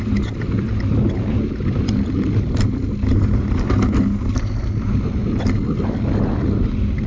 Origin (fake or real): real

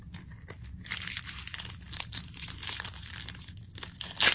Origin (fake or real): real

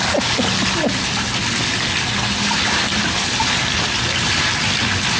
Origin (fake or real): real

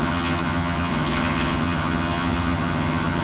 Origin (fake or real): fake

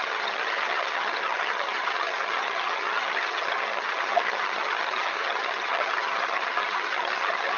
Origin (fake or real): fake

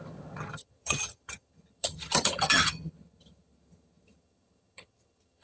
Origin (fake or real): fake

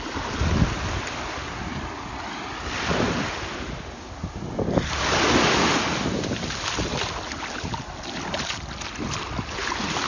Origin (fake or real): real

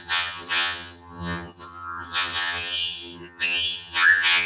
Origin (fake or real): fake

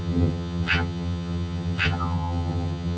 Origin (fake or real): fake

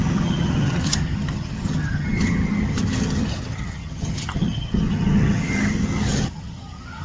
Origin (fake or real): fake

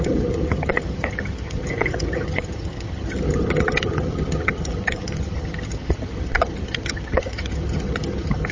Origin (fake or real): fake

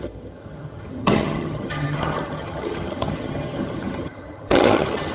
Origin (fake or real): fake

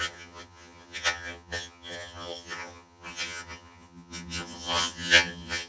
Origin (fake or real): fake